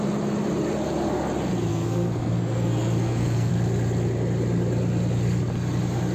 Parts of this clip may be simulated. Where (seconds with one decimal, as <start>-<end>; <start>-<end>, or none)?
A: 1.7-3.5